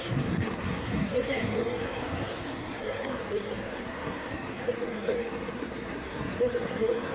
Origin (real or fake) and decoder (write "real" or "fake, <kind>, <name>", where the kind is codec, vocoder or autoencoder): fake, codec, SNAC